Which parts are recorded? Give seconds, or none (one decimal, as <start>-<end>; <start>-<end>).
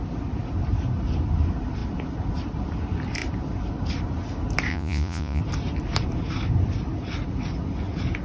0.0-4.7; 5.4-8.2